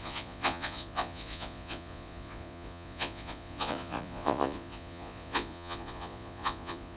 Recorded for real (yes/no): no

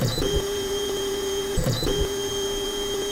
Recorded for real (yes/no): no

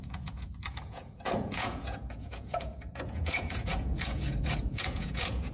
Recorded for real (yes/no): no